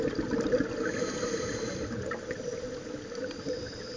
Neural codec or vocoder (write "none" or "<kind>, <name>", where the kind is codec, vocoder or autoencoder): none